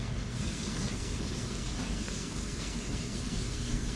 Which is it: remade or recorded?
remade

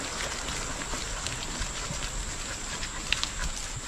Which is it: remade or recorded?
recorded